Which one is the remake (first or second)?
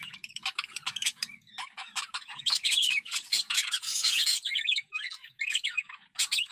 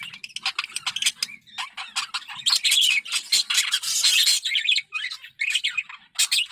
first